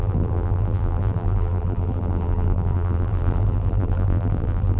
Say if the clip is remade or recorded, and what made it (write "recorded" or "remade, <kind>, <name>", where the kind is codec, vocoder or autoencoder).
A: remade, vocoder, BigVGAN v2